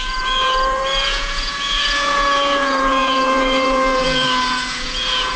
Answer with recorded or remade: remade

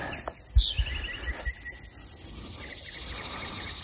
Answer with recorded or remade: recorded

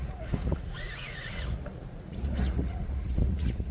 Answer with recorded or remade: remade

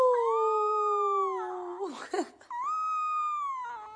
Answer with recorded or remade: recorded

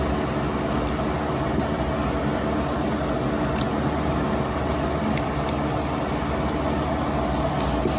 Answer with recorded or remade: recorded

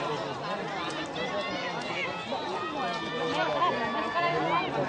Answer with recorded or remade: recorded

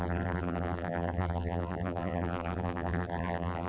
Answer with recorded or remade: remade